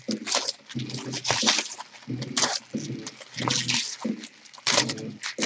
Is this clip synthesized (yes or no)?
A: no